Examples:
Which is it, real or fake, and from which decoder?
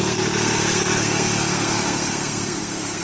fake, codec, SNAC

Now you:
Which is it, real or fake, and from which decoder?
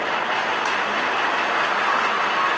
real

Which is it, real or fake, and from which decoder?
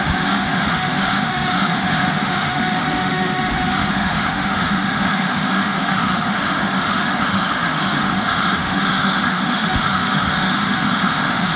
fake, autoencoder, DAC-VAE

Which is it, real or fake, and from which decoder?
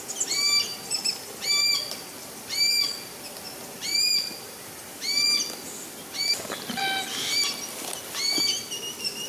real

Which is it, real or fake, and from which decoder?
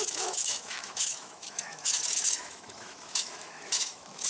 fake, autoencoder, DAC-VAE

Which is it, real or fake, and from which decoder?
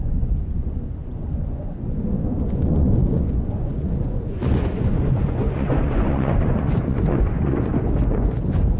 fake, vocoder, Vocos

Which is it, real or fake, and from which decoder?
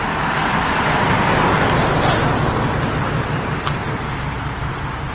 real